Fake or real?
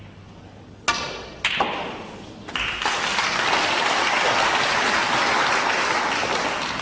real